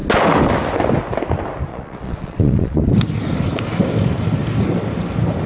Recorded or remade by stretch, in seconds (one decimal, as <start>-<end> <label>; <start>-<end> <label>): 0.0-1.7 recorded; 1.7-2.8 remade; 2.8-5.5 recorded